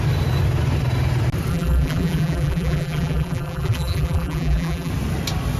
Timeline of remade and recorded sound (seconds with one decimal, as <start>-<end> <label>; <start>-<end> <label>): 0.0-1.5 recorded; 1.5-4.9 remade; 4.9-5.6 recorded